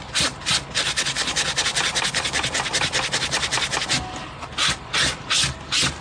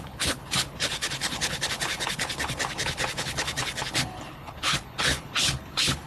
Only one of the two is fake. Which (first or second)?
second